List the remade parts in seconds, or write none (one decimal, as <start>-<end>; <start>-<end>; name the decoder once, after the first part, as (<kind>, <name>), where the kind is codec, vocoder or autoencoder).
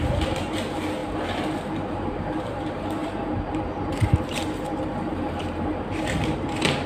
0.0-1.0 (vocoder, BigVGAN v2); 1.6-6.9